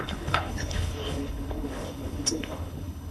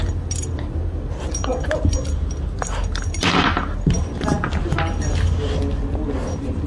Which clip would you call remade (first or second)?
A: first